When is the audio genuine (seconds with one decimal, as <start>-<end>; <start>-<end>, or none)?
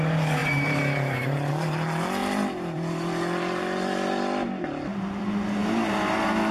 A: 0.0-0.4; 1.5-2.2; 5.2-6.5